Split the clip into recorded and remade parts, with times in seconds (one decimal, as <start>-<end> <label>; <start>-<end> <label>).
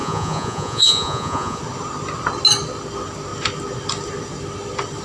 0.0-1.6 remade; 1.6-5.0 recorded